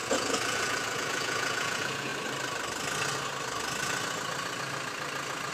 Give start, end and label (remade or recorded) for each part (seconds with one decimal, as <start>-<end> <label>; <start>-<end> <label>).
0.0-2.1 remade; 2.1-5.5 recorded